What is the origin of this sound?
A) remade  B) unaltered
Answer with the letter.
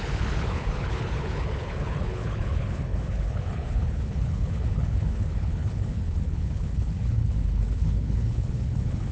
A